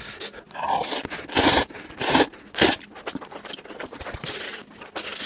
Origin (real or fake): real